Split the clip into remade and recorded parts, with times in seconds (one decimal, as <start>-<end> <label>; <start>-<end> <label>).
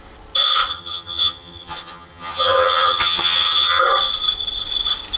0.0-0.7 recorded; 0.7-3.8 remade; 3.8-5.2 recorded